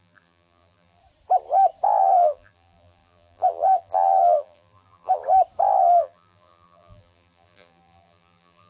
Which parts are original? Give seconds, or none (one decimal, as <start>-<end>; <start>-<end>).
1.0-2.0; 5.2-5.8